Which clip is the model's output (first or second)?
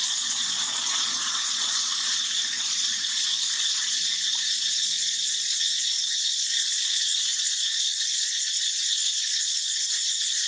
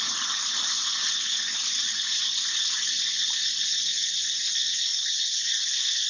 first